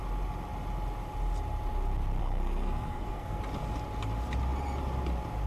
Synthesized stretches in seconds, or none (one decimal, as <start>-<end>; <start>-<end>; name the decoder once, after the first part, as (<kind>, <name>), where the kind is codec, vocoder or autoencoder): 2.2-3.4 (codec, SNAC)